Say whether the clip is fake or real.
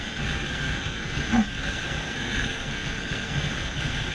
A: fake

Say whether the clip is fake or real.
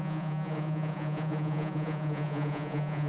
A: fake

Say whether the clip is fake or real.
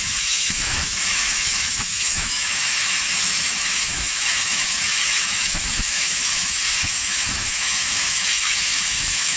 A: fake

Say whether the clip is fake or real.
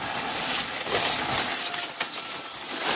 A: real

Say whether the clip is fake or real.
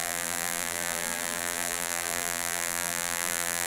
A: fake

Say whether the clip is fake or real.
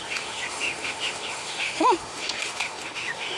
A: fake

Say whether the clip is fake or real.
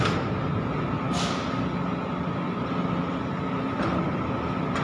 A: real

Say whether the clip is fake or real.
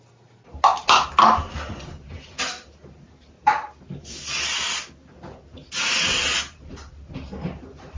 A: real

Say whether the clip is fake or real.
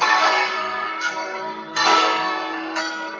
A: fake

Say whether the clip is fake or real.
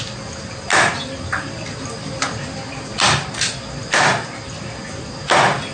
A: real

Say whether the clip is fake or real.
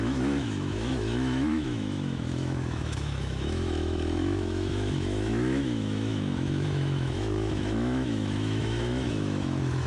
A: fake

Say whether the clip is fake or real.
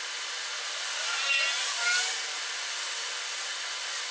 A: real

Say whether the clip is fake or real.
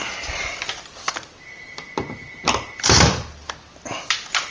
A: real